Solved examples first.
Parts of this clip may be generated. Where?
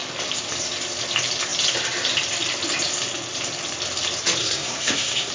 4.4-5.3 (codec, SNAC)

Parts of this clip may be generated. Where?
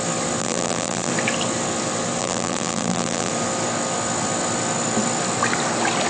0.4-1.1 (vocoder, BigVGAN v2); 2.2-3.3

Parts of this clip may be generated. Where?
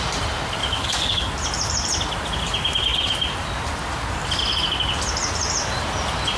0.6-1.3 (codec, DAC)